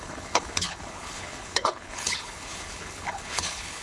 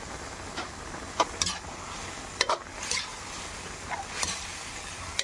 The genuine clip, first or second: second